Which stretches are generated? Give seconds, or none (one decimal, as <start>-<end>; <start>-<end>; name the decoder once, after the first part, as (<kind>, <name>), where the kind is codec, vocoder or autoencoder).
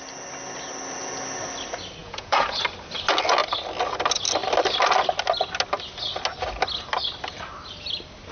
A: 2.0-2.6 (vocoder, Vocos)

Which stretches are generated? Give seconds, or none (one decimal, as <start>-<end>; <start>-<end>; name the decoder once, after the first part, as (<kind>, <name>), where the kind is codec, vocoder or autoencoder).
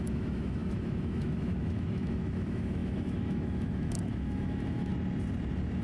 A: 0.0-4.9 (autoencoder, DAC-VAE)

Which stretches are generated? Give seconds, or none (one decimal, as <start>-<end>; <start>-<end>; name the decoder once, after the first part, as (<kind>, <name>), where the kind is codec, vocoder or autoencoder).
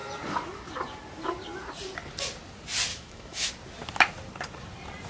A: 2.9-3.5 (autoencoder, DAC-VAE)